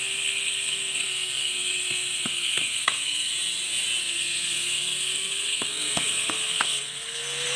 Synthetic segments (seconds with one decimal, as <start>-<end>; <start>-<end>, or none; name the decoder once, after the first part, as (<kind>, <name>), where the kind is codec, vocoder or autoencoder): 0.0-3.3 (codec, SNAC); 4.0-7.6

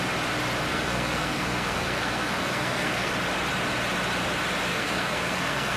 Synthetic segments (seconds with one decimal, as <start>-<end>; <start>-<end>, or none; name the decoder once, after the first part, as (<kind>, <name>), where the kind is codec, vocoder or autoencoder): 0.7-3.1 (codec, SNAC); 4.7-5.8

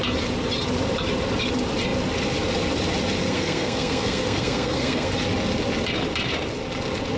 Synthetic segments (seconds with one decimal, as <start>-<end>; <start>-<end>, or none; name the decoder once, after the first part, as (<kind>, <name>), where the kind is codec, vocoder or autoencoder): 3.2-5.1 (codec, SNAC)

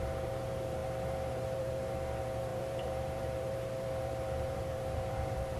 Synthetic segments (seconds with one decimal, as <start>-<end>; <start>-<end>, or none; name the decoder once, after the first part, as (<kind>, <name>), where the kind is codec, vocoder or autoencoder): 0.0-5.6 (vocoder, BigVGAN v2)

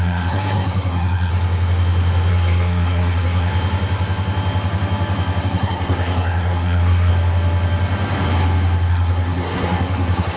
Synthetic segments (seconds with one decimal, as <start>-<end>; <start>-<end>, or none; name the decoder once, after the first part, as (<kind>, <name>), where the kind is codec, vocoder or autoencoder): 0.0-1.3 (codec, SNAC); 2.3-3.5; 5.4-7.1; 8.9-10.4

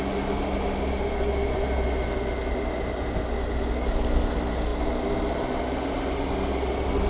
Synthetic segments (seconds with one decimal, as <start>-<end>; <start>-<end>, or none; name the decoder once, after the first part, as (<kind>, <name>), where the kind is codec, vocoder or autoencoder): none